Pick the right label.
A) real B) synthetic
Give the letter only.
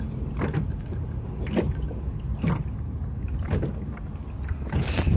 A